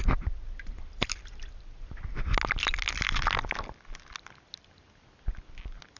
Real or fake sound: real